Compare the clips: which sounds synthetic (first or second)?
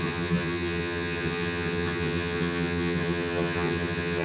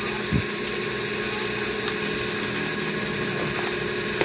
first